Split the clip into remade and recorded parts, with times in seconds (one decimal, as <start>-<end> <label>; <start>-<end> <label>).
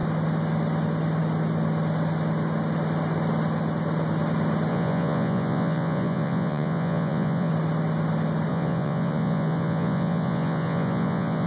0.0-4.7 recorded; 4.7-7.5 remade; 7.5-8.5 recorded; 8.5-11.5 remade